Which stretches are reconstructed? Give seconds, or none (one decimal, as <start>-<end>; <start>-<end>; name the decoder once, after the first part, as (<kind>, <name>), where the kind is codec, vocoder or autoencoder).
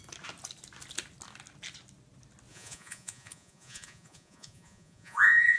2.5-5.6 (vocoder, Vocos)